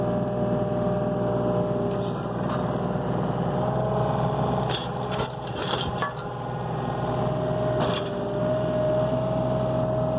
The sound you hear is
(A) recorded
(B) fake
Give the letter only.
A